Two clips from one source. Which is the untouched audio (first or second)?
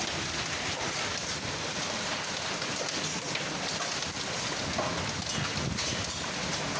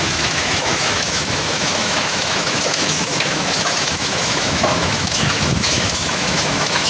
first